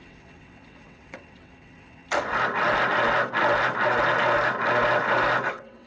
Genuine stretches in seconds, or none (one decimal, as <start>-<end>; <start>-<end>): 2.0-5.5